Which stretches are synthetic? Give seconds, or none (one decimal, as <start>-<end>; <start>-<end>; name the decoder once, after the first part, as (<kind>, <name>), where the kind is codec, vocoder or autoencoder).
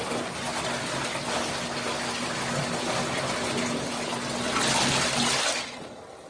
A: none